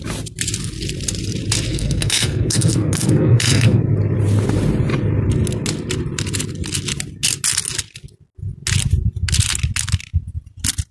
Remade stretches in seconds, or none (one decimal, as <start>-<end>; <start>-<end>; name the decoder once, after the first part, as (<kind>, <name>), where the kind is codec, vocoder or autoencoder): 1.7-3.8 (codec, SNAC)